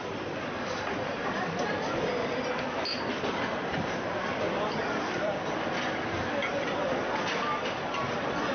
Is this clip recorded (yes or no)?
no